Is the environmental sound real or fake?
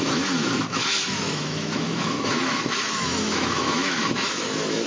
fake